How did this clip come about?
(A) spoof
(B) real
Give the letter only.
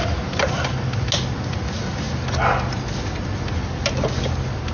B